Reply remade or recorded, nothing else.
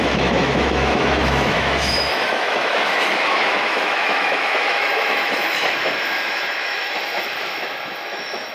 remade